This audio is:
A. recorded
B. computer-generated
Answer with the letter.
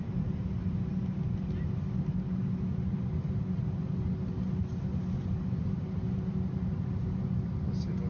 A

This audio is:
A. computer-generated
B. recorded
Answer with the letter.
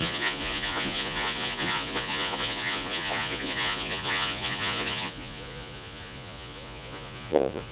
A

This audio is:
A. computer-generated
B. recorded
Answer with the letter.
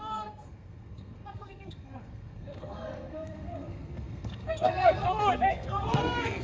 A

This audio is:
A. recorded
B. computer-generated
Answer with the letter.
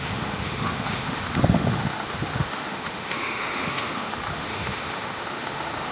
B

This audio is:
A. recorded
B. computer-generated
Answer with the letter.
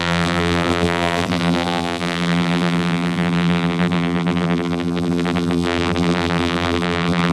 B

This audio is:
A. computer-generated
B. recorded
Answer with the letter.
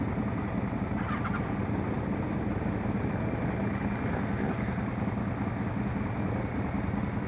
B